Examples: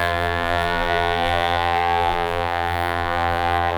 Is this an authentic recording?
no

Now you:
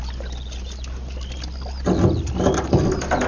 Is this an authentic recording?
yes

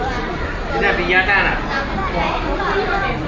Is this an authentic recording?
yes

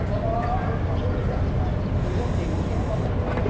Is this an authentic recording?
yes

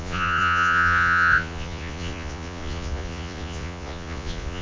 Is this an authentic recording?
no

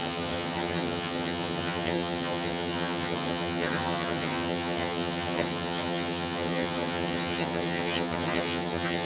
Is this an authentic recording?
no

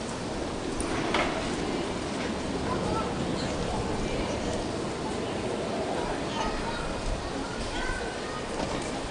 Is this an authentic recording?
yes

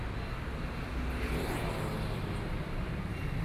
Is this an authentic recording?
no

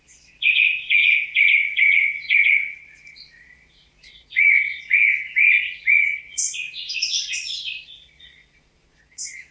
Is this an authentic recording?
no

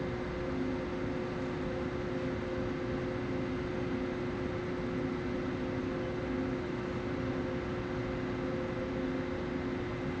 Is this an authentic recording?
yes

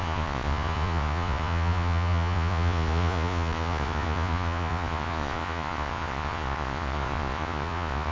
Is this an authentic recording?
no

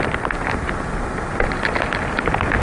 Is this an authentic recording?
yes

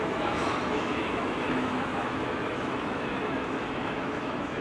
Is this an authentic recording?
no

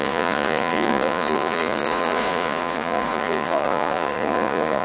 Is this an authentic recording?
no